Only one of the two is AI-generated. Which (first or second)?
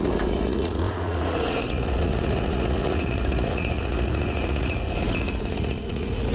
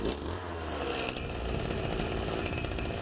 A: first